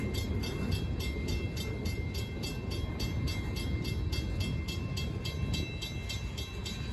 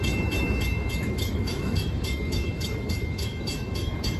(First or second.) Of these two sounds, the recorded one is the first